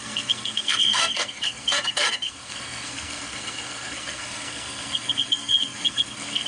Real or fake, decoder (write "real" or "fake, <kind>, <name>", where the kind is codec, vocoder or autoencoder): fake, codec, SNAC